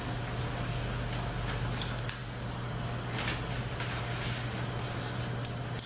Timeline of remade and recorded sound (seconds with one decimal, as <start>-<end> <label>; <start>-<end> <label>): 0.0-5.9 recorded